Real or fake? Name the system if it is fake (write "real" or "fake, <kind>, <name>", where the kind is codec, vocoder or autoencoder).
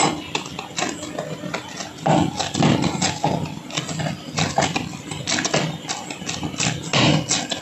real